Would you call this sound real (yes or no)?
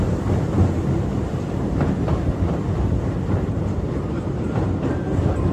no